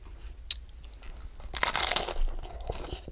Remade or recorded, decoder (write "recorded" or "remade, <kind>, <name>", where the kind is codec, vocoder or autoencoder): recorded